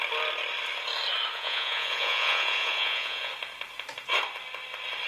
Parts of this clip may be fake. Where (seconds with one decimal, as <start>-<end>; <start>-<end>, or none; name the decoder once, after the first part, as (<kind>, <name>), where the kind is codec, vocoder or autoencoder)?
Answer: 1.3-3.3 (vocoder, Vocos)